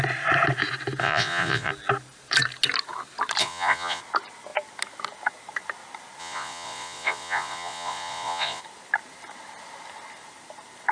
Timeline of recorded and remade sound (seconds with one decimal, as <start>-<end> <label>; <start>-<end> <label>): 0.0-1.0 recorded; 1.0-1.7 remade; 1.7-3.4 recorded; 3.4-4.0 remade; 4.0-6.2 recorded; 6.2-8.6 remade; 8.6-10.9 recorded